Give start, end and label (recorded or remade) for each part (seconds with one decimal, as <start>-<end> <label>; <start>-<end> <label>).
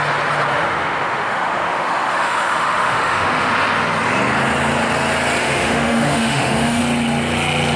0.0-0.5 recorded; 0.5-3.5 remade; 3.5-5.4 recorded; 5.4-6.8 remade; 6.8-7.8 recorded